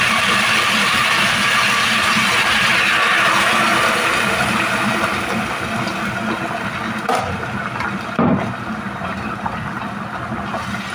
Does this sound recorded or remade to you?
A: recorded